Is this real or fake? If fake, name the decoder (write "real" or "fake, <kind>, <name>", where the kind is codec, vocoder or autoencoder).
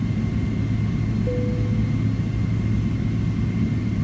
real